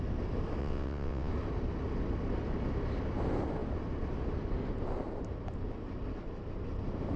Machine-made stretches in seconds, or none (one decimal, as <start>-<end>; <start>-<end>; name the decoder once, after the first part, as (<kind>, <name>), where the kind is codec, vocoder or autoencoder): 0.6-1.3 (vocoder, WaveNeXt)